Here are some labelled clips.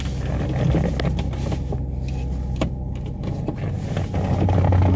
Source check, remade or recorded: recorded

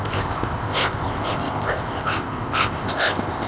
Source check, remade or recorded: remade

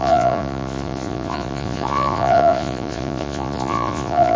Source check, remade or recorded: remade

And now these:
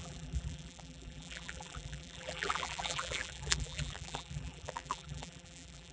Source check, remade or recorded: remade